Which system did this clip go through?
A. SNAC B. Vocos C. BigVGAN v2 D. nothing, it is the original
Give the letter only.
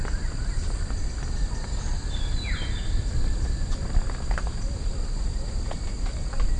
D